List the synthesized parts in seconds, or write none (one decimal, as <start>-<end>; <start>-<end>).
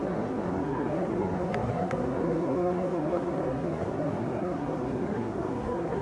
0.0-6.0